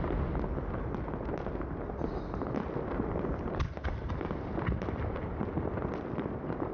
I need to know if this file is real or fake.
real